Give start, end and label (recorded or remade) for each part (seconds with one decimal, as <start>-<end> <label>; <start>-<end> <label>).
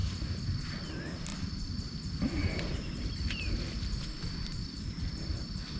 0.0-1.3 recorded; 1.3-3.0 remade; 3.0-5.8 recorded